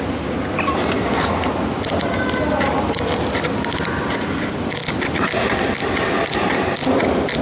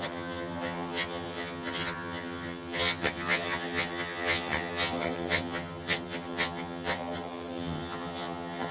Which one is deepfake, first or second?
second